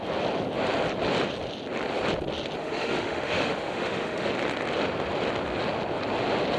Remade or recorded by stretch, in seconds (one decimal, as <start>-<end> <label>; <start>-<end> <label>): 0.0-2.6 recorded; 2.6-4.3 remade; 4.3-6.6 recorded